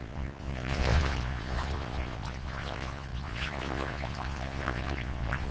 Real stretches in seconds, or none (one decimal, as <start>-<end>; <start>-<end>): none